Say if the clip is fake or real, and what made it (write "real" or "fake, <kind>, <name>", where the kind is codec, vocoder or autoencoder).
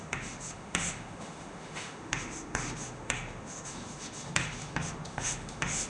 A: fake, autoencoder, DAC-VAE